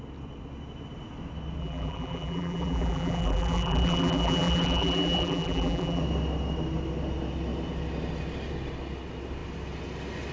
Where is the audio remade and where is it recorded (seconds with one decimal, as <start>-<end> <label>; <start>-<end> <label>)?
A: 0.0-1.6 recorded; 1.6-6.0 remade; 6.0-10.3 recorded